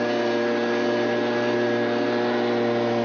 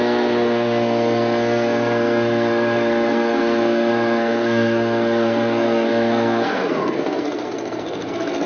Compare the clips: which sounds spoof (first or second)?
second